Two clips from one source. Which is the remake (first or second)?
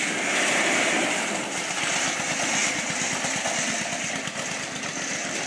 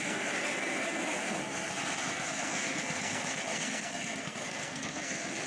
second